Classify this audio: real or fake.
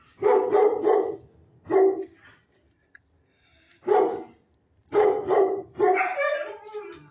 real